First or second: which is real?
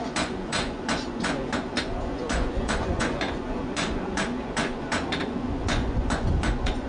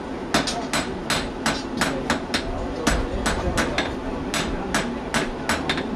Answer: second